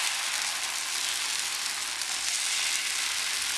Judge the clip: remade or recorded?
recorded